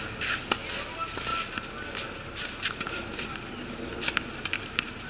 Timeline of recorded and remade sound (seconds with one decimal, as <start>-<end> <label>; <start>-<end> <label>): 0.0-5.1 recorded